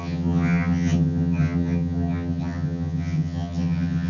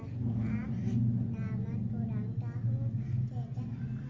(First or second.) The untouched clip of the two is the second